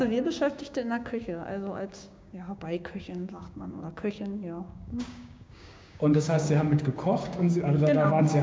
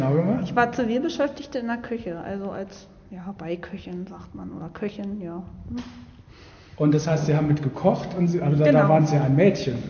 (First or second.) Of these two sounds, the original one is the second